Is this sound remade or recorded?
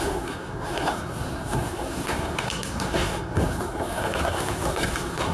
remade